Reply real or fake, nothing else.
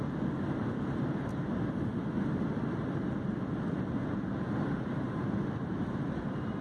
real